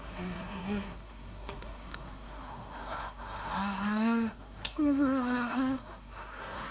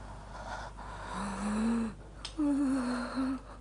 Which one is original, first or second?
second